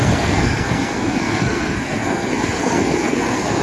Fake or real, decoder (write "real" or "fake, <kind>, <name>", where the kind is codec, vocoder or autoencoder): fake, codec, SNAC